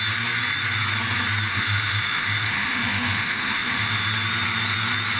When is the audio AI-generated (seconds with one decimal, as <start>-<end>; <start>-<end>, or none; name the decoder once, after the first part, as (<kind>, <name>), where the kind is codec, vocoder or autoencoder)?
1.5-4.0 (autoencoder, DAC-VAE)